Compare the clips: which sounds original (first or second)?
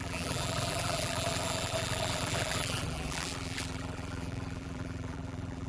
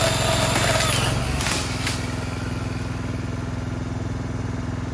second